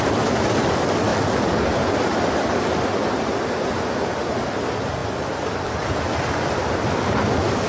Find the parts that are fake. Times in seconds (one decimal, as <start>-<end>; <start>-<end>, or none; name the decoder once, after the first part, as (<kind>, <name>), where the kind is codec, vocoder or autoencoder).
none